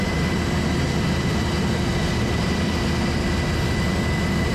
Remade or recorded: recorded